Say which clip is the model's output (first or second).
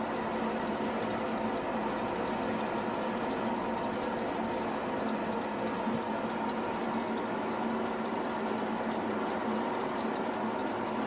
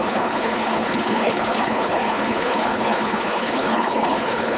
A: second